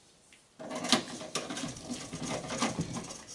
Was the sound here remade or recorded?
recorded